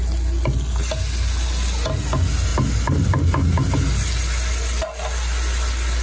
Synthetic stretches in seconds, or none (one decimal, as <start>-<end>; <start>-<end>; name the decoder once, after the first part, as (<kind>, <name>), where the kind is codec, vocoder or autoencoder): none